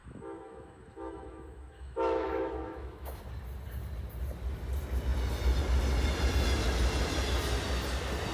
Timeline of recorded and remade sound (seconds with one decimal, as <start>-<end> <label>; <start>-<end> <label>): 0.0-3.2 remade; 3.2-8.3 recorded